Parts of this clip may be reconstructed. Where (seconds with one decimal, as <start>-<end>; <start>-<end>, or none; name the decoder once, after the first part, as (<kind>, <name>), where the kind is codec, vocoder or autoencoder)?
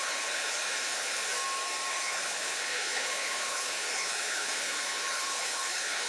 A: 0.0-1.3 (codec, HILCodec); 1.9-6.1